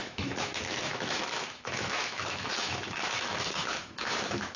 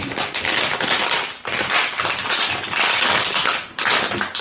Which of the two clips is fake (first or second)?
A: first